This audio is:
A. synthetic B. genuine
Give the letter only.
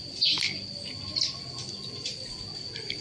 B